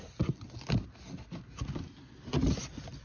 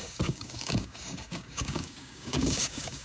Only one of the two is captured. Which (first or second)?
first